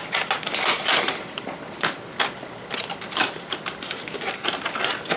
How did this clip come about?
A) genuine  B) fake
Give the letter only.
A